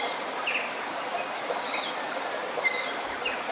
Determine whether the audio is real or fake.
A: real